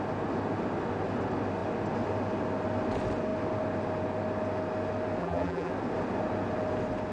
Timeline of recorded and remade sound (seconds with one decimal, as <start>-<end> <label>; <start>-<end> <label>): 0.0-5.2 recorded; 5.2-5.7 remade; 5.7-7.1 recorded